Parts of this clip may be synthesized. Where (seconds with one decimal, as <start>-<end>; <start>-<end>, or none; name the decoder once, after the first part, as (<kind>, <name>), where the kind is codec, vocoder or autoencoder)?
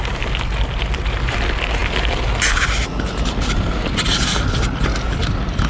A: none